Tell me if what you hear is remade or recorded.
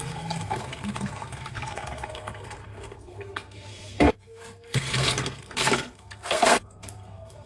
remade